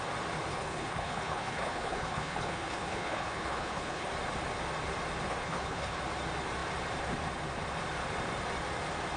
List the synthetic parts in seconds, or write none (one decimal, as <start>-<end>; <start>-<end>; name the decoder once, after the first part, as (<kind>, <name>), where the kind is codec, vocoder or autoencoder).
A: 0.5-4.1 (codec, HILCodec); 5.3-6.0